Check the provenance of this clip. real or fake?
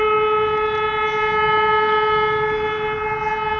real